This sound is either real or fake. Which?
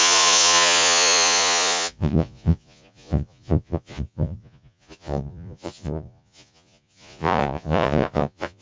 fake